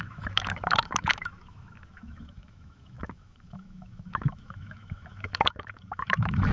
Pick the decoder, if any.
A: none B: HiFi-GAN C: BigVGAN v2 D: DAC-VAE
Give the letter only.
D